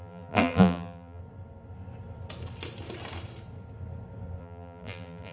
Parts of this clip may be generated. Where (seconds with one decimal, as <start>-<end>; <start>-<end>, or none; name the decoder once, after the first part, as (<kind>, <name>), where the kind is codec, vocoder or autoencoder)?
0.0-1.2 (vocoder, BigVGAN v2); 4.4-5.3